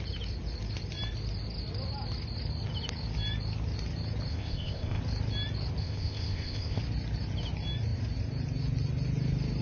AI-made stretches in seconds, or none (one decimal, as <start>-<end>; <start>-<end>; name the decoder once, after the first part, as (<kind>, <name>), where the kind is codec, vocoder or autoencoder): 4.3-5.0 (codec, ZipCodec); 5.8-6.8